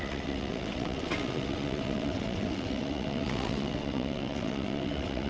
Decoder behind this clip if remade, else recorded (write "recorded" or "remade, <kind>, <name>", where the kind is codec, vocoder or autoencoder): remade, vocoder, WaveNeXt